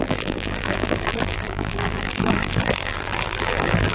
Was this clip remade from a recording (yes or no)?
yes